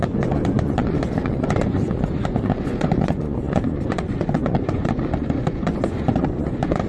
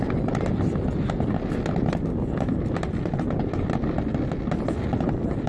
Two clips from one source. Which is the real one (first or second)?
second